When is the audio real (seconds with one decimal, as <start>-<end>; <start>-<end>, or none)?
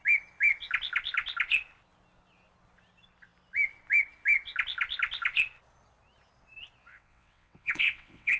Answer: 0.0-6.9